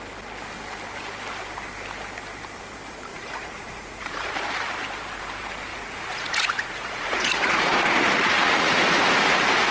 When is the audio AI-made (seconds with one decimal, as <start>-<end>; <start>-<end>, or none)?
3.1-4.3; 5.7-8.8